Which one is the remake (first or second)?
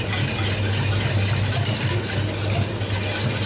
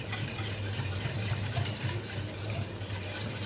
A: second